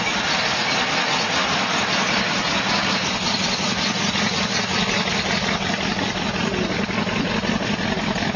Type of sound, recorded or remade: recorded